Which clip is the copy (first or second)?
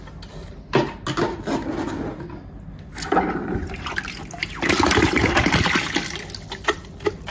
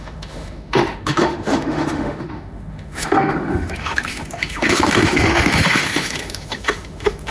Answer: second